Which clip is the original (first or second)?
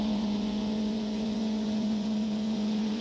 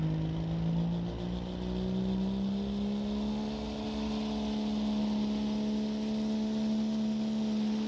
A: second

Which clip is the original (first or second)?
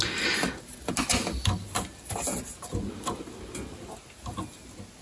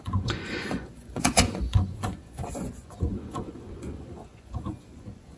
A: first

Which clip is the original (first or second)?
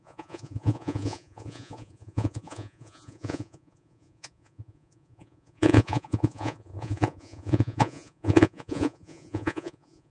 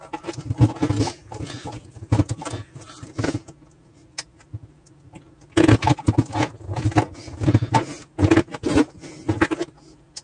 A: second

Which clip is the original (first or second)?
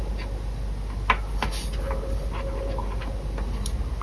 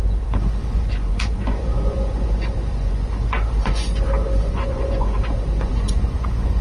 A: first